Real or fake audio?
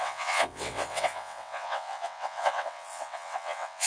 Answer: fake